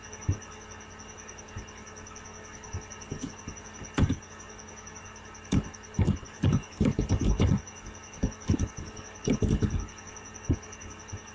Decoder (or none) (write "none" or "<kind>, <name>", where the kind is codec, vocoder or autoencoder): codec, DAC